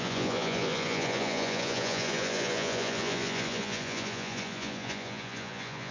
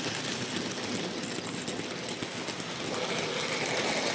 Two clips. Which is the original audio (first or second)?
second